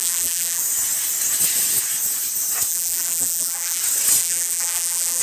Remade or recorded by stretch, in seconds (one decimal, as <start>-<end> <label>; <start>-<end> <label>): 0.0-0.6 remade; 0.6-2.7 recorded; 2.7-3.8 remade; 3.8-4.2 recorded; 4.2-5.2 remade

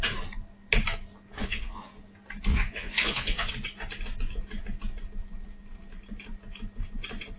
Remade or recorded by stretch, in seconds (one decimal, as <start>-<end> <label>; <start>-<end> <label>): 0.0-1.4 recorded; 1.4-1.9 remade; 1.9-2.5 recorded; 2.5-3.5 remade; 3.5-7.4 recorded

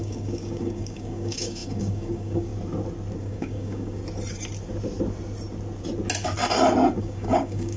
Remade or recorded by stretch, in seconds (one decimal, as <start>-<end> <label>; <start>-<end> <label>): 0.0-2.5 remade; 2.5-3.2 recorded; 3.2-4.0 remade; 4.0-7.0 recorded; 7.0-7.8 remade

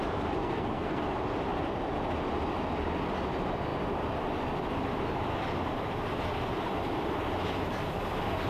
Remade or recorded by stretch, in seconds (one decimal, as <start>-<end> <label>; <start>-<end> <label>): 0.0-0.4 recorded; 0.4-1.0 remade; 1.0-8.5 recorded

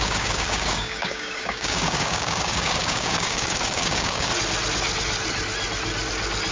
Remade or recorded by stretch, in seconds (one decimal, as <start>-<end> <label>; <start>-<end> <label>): 0.0-4.3 remade; 4.3-6.5 recorded

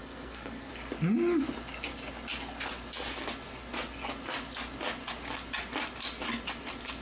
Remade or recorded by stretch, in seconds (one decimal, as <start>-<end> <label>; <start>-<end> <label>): 0.0-0.7 remade; 0.7-7.0 recorded